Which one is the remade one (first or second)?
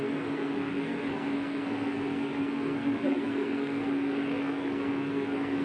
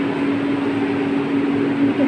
first